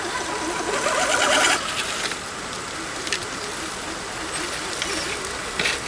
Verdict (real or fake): real